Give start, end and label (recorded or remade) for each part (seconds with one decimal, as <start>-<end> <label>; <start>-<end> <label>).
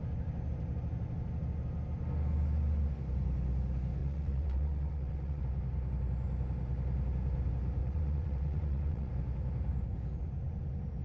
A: 0.0-4.0 recorded; 4.0-5.4 remade; 5.4-7.8 recorded; 7.8-9.1 remade; 9.1-11.0 recorded